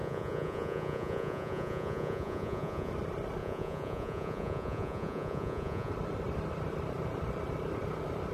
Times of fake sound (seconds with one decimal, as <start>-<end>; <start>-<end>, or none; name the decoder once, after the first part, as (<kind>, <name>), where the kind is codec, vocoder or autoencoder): 0.0-2.9 (vocoder, Vocos); 3.4-5.9

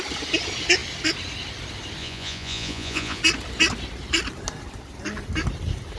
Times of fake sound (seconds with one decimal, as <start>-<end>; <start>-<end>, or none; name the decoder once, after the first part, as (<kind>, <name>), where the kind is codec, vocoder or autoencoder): 2.0-3.2 (vocoder, Vocos)

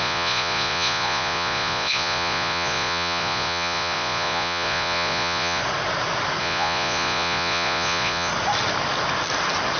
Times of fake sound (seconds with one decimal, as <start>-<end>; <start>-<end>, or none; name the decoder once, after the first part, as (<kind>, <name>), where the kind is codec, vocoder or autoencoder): 0.0-5.6 (vocoder, Vocos); 6.4-8.3